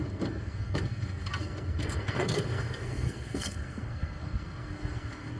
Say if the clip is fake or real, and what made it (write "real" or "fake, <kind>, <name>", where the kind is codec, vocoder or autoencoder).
fake, codec, SNAC